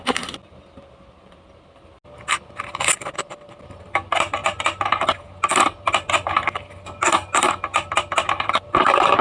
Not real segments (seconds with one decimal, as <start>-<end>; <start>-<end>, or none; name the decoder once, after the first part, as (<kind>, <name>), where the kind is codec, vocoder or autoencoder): none

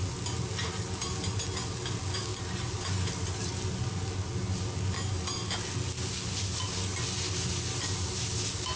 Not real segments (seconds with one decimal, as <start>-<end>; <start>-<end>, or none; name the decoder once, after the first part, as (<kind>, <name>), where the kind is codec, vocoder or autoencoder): none

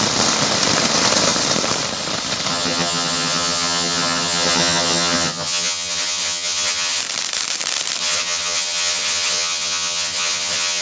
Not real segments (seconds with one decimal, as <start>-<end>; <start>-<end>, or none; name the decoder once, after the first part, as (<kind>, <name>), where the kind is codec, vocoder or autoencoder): 2.5-7.0 (vocoder, HiFi-GAN); 8.0-10.8

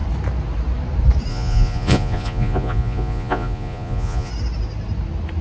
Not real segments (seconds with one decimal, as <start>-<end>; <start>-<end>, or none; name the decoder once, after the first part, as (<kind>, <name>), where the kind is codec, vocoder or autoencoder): 1.3-4.3 (vocoder, Vocos)

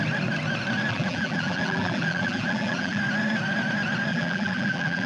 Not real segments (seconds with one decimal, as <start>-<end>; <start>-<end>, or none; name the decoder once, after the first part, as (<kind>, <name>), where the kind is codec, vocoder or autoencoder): 0.9-3.0 (vocoder, BigVGAN v2); 4.1-5.1